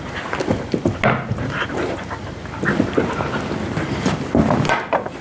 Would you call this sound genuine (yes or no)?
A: yes